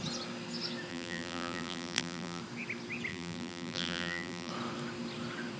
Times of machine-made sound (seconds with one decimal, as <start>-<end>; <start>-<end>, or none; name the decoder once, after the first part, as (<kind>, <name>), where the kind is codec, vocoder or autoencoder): 0.9-2.4 (vocoder, BigVGAN v2); 3.1-4.5